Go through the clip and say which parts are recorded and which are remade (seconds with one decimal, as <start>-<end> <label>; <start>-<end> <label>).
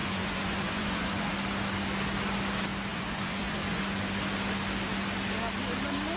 0.0-1.3 remade; 1.3-2.9 recorded; 2.9-3.8 remade; 3.8-6.2 recorded